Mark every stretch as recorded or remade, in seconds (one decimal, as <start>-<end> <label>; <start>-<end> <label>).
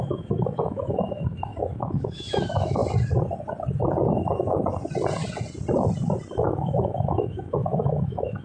0.0-2.8 remade; 2.8-4.1 recorded; 4.1-4.6 remade; 4.6-6.4 recorded; 6.4-8.4 remade